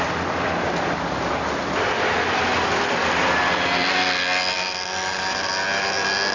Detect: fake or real real